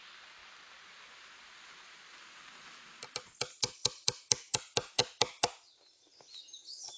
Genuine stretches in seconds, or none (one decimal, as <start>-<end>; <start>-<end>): 0.0-0.4; 1.6-5.0; 5.6-7.0